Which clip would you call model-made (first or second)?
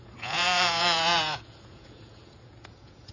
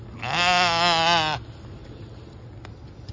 first